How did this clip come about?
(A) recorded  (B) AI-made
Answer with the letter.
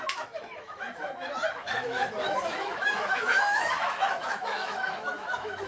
B